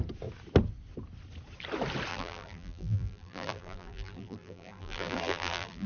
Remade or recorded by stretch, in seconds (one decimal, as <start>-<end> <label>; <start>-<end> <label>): 0.0-2.1 recorded; 2.1-5.9 remade